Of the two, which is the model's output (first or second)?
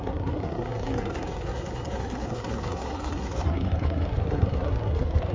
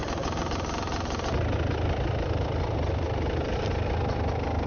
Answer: first